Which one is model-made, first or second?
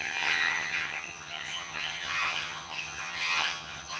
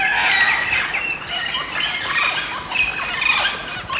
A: first